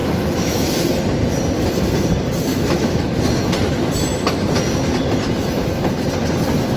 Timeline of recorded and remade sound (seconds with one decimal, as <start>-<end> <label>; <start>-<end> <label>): 0.0-0.7 remade; 0.7-2.5 recorded; 2.5-3.0 remade; 3.0-6.8 recorded